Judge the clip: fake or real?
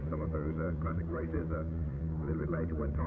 fake